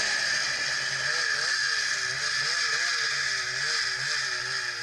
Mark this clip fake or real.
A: real